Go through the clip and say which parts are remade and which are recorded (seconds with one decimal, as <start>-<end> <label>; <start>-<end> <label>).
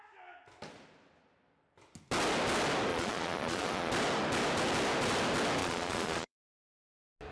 0.0-2.9 recorded; 2.9-3.9 remade; 3.9-5.6 recorded; 5.6-6.6 remade; 6.6-7.3 recorded